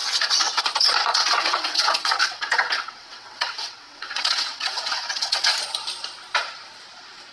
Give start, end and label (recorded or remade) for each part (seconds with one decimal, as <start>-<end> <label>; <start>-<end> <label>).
0.0-0.6 remade; 0.6-1.1 recorded; 1.1-5.5 remade; 5.5-7.3 recorded